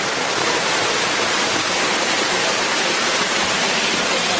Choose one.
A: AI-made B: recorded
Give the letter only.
A